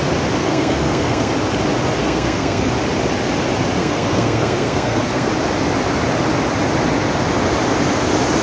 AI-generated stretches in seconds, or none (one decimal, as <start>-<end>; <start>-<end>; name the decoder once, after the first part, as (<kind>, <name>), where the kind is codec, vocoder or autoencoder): 0.4-1.3 (codec, SNAC); 2.0-2.7; 3.8-5.3